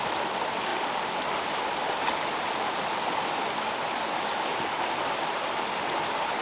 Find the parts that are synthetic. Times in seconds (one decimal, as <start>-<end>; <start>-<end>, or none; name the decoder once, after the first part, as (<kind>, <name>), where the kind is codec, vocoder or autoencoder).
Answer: none